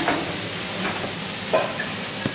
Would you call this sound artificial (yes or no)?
no